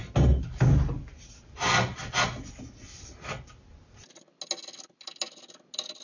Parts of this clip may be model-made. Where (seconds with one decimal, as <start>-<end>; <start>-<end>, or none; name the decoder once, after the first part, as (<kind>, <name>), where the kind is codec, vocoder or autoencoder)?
none